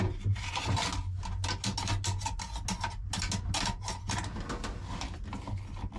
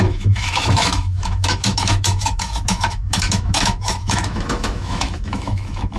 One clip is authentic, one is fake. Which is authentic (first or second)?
first